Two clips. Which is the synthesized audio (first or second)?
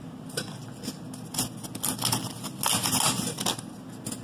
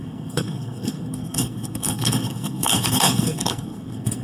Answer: second